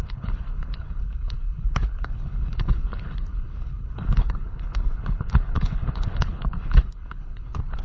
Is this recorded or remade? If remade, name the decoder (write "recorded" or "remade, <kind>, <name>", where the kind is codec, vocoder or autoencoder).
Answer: remade, codec, HILCodec